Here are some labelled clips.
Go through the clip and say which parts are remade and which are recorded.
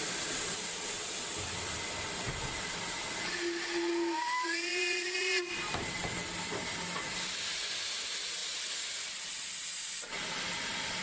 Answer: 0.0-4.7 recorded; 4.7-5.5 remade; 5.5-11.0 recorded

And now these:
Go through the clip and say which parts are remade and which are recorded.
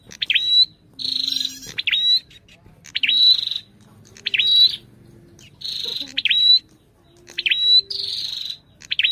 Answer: 0.0-5.9 recorded; 5.9-6.6 remade; 6.6-9.1 recorded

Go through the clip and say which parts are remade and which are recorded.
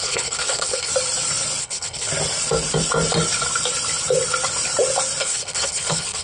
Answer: 0.0-0.9 remade; 0.9-1.6 recorded; 1.6-2.1 remade; 2.1-5.2 recorded; 5.2-6.2 remade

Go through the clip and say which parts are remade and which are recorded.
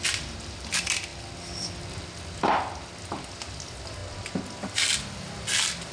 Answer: 0.0-5.9 recorded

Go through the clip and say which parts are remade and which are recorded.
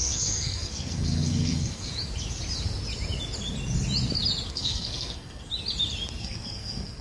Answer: 0.0-1.9 remade; 1.9-4.5 recorded; 4.5-5.5 remade; 5.5-6.2 recorded; 6.2-7.0 remade